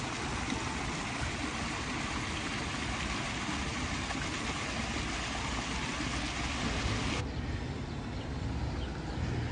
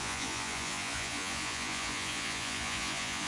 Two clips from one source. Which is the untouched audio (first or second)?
first